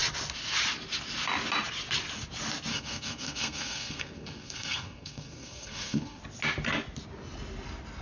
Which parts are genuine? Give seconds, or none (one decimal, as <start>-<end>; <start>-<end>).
0.0-2.7; 6.2-8.0